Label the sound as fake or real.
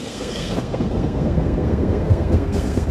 fake